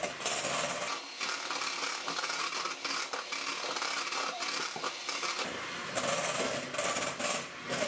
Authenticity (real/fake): real